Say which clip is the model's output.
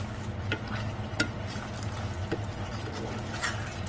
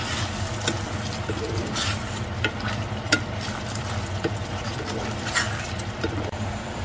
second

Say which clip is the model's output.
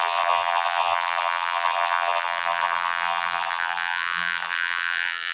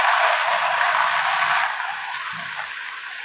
first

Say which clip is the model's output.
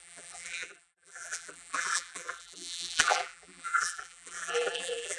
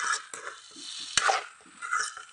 first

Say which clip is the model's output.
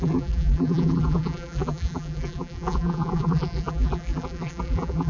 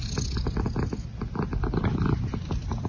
first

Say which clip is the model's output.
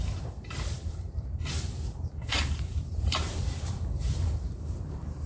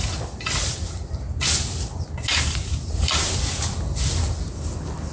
first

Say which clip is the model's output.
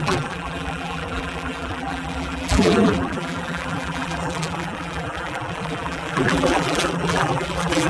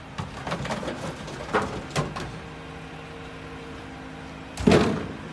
first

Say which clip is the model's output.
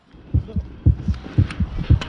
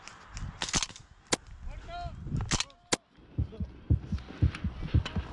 first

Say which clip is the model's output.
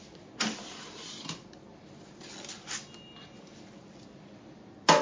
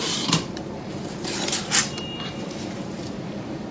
second